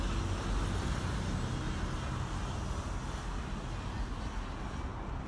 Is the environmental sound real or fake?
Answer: real